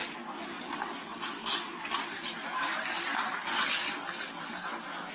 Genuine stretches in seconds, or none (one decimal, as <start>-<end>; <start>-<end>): 0.0-5.1